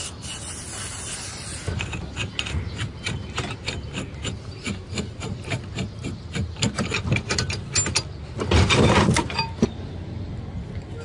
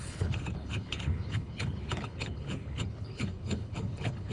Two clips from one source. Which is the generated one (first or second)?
second